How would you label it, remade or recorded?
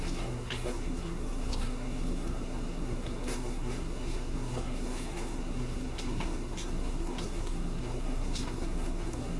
remade